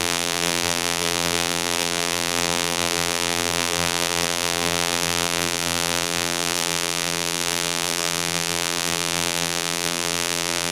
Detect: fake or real fake